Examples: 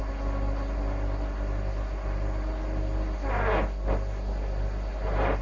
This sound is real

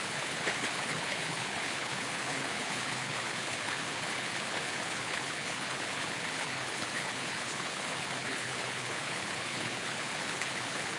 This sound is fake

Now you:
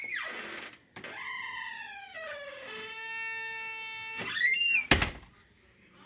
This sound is real